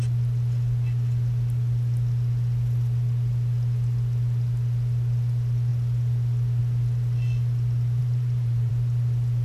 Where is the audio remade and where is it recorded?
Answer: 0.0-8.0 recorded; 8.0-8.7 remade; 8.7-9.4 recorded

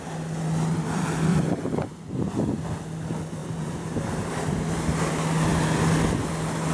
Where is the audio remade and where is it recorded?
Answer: 0.0-1.3 recorded; 1.3-2.1 remade; 2.1-3.4 recorded; 3.4-5.1 remade; 5.1-6.7 recorded

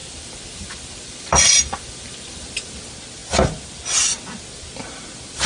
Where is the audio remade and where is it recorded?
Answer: 0.0-2.5 remade; 2.5-5.5 recorded

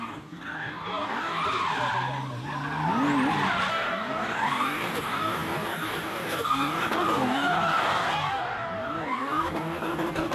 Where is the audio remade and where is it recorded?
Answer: 0.0-1.4 remade; 1.4-3.7 recorded; 3.7-10.3 remade

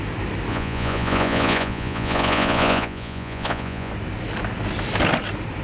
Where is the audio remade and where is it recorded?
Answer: 0.0-0.5 recorded; 0.5-3.9 remade; 3.9-5.6 recorded

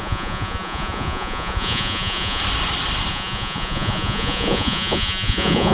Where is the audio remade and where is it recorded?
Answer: 0.0-2.4 remade; 2.4-3.1 recorded; 3.1-5.7 remade

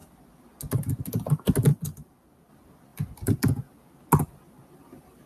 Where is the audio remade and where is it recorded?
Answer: 0.0-1.7 recorded; 1.7-2.5 remade; 2.5-2.9 recorded; 2.9-3.9 remade; 3.9-5.3 recorded